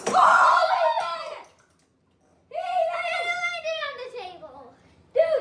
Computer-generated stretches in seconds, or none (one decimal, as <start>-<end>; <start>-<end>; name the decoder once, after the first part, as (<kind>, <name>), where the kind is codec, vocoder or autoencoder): none